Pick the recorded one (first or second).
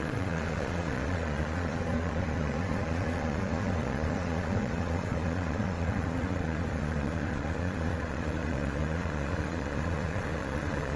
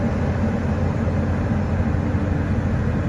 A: second